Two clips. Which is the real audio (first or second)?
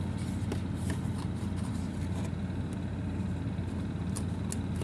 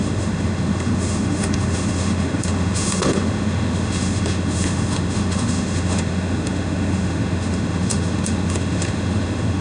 first